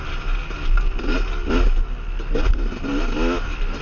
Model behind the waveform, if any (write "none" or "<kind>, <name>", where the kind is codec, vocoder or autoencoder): none